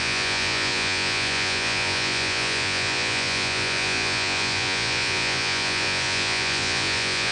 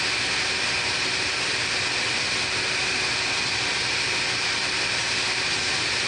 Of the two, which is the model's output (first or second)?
first